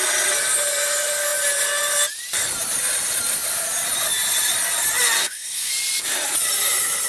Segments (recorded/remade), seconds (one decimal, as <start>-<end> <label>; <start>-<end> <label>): 0.0-5.2 recorded; 5.2-5.7 remade; 5.7-7.1 recorded